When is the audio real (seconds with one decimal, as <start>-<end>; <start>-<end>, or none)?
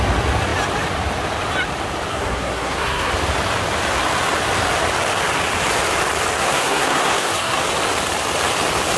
0.0-2.1; 3.1-6.4; 7.6-9.0